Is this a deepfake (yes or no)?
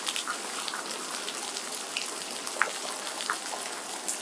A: no